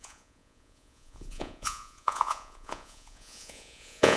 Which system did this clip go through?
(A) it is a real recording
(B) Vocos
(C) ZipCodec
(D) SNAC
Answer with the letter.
B